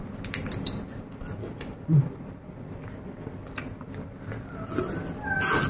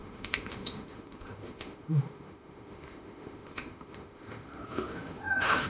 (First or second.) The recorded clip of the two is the first